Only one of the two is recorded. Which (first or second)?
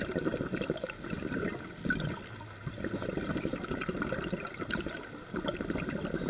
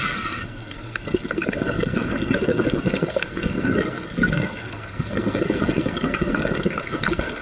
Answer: first